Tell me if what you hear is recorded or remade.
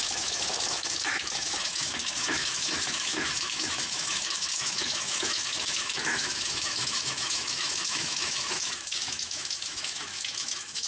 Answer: remade